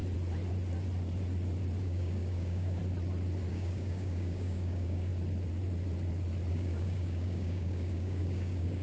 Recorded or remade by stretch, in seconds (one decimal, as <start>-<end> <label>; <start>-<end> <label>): 0.0-1.8 recorded; 1.8-2.8 remade; 2.8-3.5 recorded; 3.5-5.1 remade; 5.1-6.5 recorded; 6.5-8.8 remade